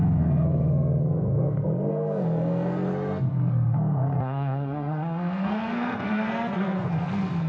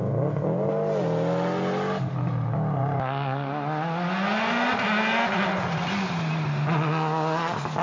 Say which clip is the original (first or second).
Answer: second